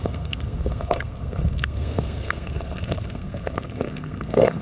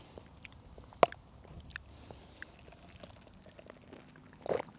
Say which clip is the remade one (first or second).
first